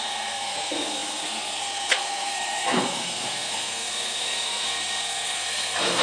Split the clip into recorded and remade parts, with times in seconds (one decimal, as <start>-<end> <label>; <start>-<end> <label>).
0.0-6.0 remade